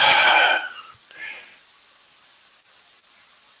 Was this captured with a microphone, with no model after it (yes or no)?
yes